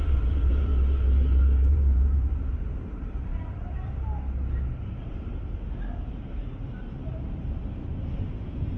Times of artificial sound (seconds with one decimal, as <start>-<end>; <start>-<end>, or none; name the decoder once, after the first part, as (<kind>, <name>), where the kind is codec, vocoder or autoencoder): 0.0-0.7 (vocoder, BigVGAN v2); 1.7-3.3; 6.1-8.8

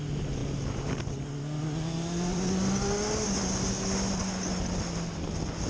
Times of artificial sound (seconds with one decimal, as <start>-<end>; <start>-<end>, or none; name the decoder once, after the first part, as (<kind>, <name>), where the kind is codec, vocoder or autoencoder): none